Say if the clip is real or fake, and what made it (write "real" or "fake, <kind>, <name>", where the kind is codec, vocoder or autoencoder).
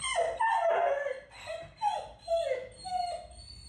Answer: real